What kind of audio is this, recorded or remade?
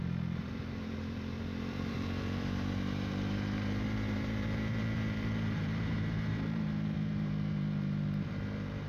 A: remade